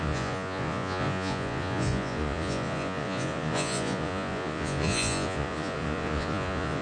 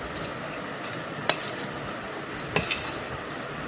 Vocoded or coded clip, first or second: first